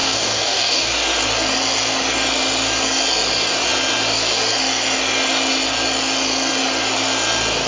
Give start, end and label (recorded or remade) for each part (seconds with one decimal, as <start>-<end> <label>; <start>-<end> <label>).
0.0-0.9 remade; 0.9-7.7 recorded